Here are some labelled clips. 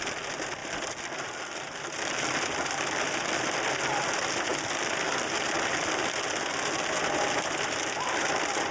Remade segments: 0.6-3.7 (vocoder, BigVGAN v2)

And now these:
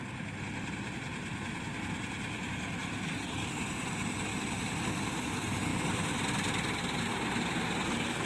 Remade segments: 2.8-3.5 (vocoder, BigVGAN v2); 4.3-4.8